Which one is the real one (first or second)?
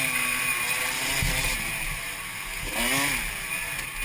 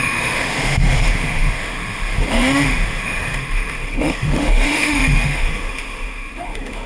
first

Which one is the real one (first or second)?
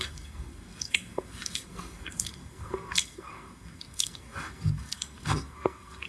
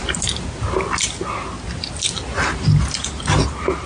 second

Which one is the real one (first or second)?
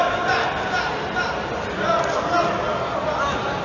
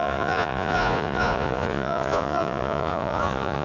first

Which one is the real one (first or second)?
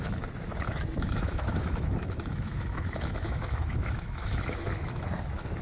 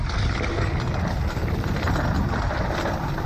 second